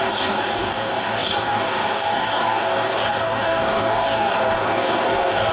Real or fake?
fake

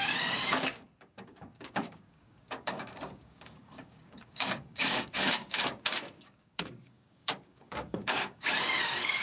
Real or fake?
fake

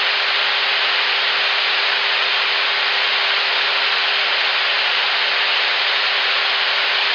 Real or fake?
real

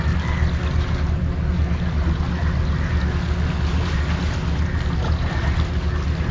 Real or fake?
real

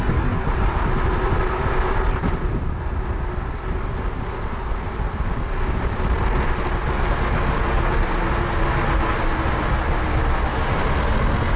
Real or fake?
real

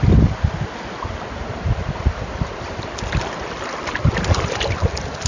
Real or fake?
real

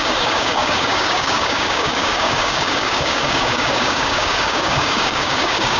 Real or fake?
fake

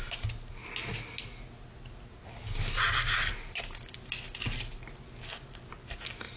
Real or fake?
real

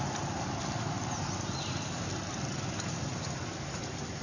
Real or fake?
real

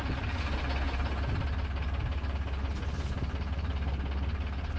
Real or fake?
real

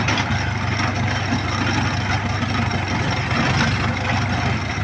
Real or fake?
real